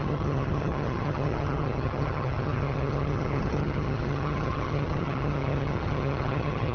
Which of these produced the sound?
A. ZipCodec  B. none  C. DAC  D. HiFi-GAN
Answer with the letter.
D